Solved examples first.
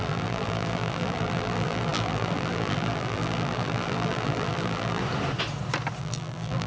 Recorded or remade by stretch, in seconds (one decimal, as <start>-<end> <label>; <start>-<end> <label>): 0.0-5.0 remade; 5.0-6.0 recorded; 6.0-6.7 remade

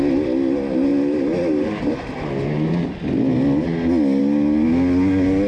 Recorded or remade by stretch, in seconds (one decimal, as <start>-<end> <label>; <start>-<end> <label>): 0.0-5.5 recorded

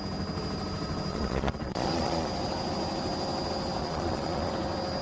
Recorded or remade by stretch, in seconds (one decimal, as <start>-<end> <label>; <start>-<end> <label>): 0.0-1.1 recorded; 1.1-2.3 remade; 2.3-3.8 recorded; 3.8-4.5 remade; 4.5-5.0 recorded

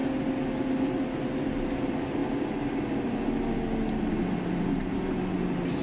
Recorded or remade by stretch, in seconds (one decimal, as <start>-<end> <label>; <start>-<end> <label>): 0.0-5.8 recorded

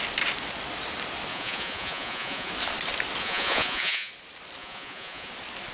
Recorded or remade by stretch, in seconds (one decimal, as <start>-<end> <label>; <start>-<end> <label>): 0.0-1.3 recorded; 1.3-2.5 remade; 2.5-3.2 recorded; 3.2-4.1 remade; 4.1-4.6 recorded; 4.6-5.3 remade; 5.3-5.7 recorded

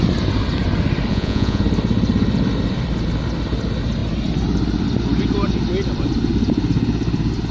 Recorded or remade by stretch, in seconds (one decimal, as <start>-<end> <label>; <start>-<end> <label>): 0.0-1.1 recorded; 1.1-1.6 remade; 1.6-7.5 recorded

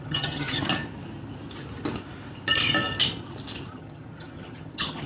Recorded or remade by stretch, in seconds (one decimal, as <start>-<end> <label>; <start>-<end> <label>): 0.0-0.6 remade; 0.6-3.7 recorded; 3.7-5.1 remade

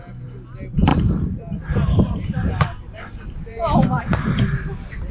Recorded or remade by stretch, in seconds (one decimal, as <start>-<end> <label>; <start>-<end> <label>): 0.0-0.9 recorded; 0.9-4.0 remade; 4.0-5.1 recorded